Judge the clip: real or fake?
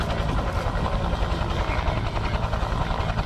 real